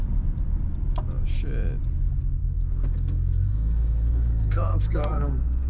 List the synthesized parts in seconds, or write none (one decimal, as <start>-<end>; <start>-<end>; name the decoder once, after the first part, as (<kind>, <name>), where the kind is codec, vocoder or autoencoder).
2.4-5.7 (codec, SNAC)